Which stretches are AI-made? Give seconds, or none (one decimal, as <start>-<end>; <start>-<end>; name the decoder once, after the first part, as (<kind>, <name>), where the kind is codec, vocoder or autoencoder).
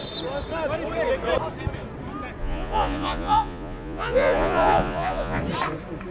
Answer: 2.4-5.4 (vocoder, Vocos)